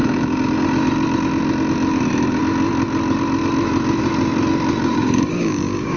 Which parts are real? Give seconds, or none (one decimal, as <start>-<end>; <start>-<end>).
0.0-4.9